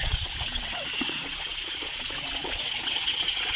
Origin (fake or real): fake